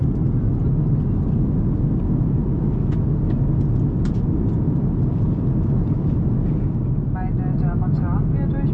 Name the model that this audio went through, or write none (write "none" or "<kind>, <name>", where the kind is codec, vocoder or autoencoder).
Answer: none